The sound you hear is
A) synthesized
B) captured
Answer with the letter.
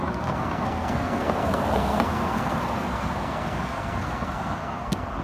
A